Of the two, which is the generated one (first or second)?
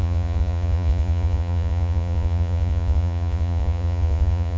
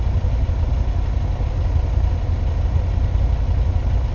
first